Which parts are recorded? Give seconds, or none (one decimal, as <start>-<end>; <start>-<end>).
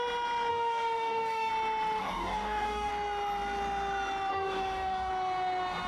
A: 0.0-0.5; 1.5-2.0; 2.9-4.3; 5.1-5.9